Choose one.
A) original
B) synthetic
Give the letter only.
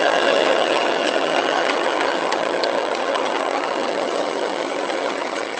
B